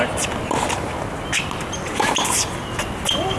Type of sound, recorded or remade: recorded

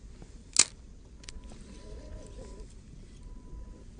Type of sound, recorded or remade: recorded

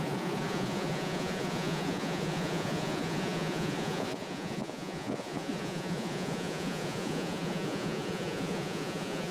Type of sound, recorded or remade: remade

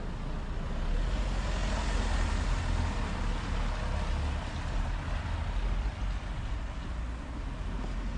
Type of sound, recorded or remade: recorded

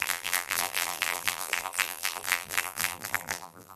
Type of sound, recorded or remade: remade